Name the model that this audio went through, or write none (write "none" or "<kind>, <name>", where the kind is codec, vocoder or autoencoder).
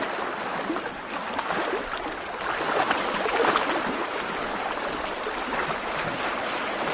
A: none